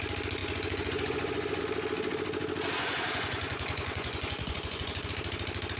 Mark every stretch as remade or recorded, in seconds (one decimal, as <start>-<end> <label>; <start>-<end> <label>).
0.0-0.4 recorded; 0.4-1.6 remade; 1.6-2.8 recorded; 2.8-5.1 remade; 5.1-5.8 recorded